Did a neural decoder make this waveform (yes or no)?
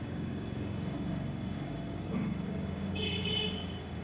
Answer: yes